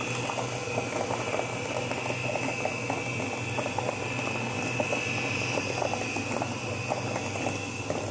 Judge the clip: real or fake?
real